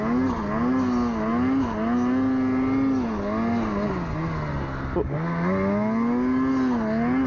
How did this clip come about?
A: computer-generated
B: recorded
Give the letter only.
B